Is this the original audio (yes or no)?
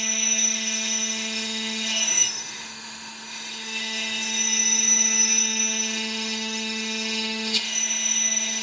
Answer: no